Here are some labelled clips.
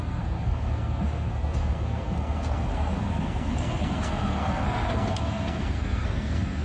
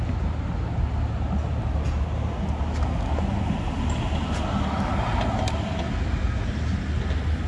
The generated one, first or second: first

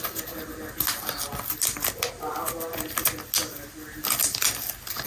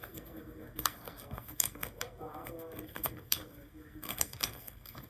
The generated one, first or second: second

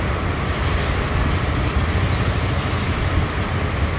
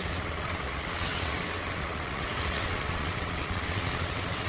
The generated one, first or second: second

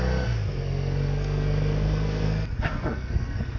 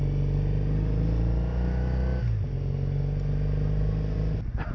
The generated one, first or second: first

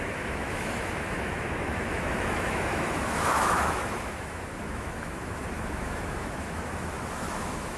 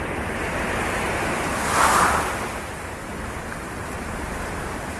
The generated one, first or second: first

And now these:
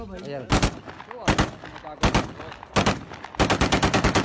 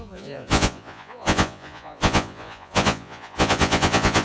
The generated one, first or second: second